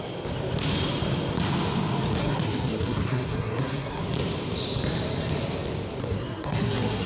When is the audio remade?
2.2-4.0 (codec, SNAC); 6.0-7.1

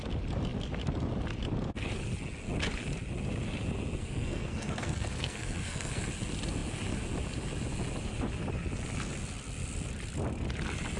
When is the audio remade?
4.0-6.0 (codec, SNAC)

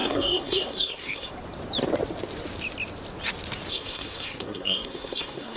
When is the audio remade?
0.0-1.3 (codec, SNAC); 3.7-5.6

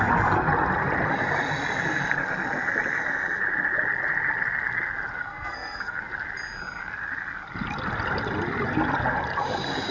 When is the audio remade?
5.2-6.0 (codec, SNAC)

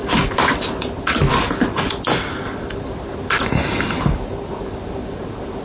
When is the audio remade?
none